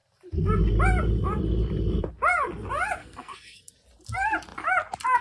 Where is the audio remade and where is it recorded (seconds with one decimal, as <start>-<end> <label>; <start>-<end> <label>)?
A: 0.0-3.0 recorded; 3.0-3.7 remade; 3.7-5.2 recorded